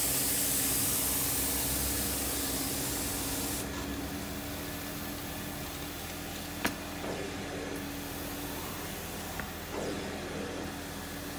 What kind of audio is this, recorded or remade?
recorded